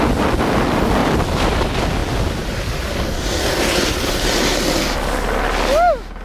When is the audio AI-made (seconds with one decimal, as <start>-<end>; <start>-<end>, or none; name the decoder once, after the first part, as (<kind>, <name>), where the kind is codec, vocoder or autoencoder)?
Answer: 1.0-1.6 (vocoder, BigVGAN v2)